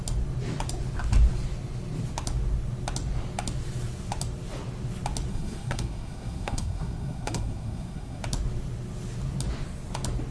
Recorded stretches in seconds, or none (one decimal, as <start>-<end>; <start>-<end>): 0.0-5.3; 8.2-10.3